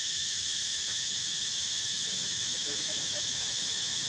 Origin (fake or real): fake